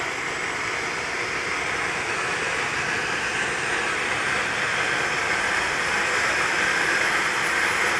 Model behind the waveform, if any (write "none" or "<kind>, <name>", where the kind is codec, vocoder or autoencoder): none